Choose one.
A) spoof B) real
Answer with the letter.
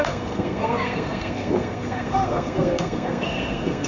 A